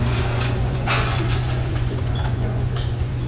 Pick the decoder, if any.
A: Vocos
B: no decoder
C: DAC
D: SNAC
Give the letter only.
A